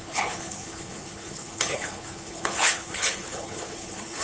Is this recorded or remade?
remade